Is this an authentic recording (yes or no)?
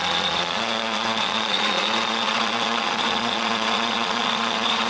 no